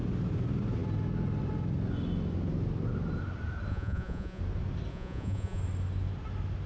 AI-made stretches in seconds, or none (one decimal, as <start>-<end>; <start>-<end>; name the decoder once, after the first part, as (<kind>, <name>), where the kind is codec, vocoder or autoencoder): 3.7-4.4 (vocoder, Vocos); 4.9-5.6